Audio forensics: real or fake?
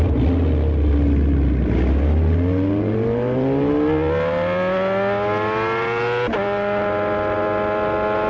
real